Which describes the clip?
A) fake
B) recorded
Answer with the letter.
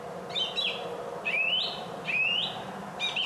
A